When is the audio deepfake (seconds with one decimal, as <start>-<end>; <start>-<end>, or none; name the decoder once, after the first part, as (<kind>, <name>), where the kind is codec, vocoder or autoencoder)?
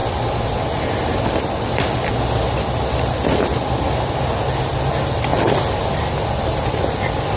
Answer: 0.0-4.4 (vocoder, BigVGAN v2)